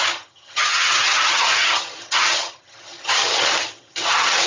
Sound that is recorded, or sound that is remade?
remade